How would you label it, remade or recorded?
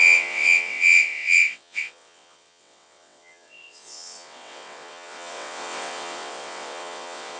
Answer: remade